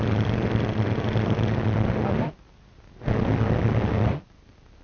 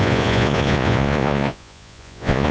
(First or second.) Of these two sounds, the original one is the first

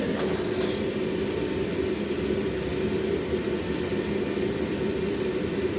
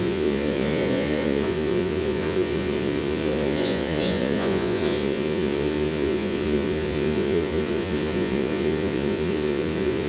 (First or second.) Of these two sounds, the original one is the first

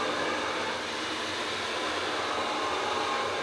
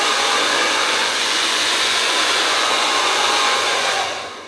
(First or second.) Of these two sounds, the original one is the first